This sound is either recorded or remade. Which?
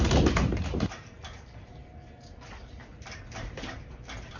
remade